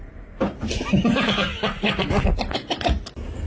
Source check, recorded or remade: recorded